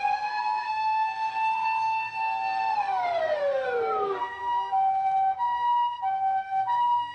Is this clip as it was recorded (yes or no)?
no